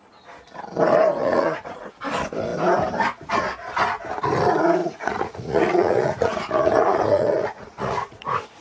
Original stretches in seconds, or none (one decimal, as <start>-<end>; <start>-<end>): 0.0-1.2; 1.9-4.8